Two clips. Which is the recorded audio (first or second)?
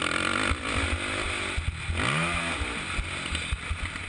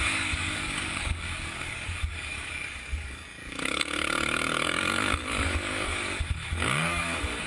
first